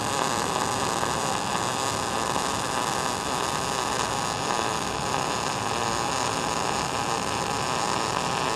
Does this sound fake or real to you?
real